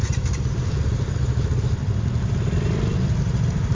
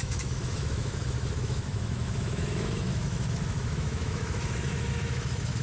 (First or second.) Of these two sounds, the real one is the first